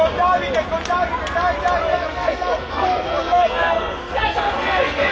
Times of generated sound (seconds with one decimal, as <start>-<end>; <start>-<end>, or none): 1.9-5.1